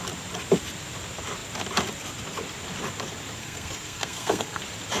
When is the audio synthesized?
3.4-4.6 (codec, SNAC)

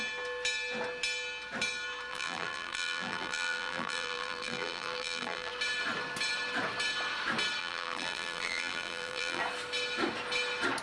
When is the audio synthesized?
2.1-5.5 (vocoder, BigVGAN v2); 7.6-9.4

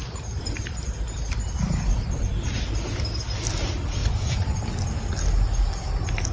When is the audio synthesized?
0.0-2.6 (vocoder, BigVGAN v2); 4.0-4.5

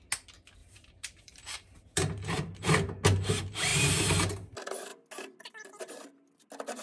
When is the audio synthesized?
0.6-2.7 (vocoder, BigVGAN v2); 3.7-4.5

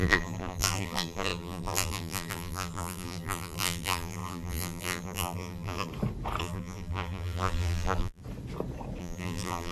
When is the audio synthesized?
0.0-5.9 (vocoder, BigVGAN v2); 6.4-8.2; 9.0-9.7